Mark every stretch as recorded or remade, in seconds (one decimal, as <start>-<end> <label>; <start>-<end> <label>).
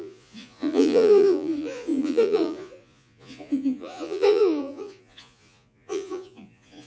0.0-6.9 remade